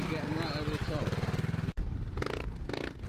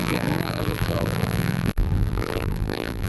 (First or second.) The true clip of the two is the first